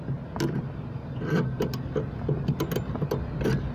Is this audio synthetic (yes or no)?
no